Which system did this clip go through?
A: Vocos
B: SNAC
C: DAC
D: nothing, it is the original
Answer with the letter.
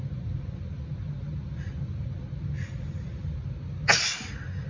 D